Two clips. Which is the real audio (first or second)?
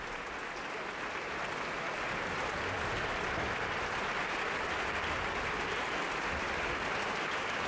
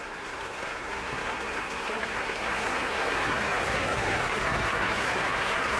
first